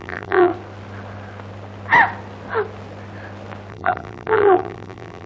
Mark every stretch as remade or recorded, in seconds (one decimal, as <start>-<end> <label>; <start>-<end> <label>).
0.0-0.5 remade; 0.5-3.7 recorded; 3.7-5.3 remade